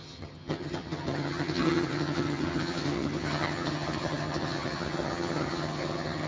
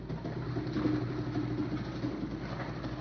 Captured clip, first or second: second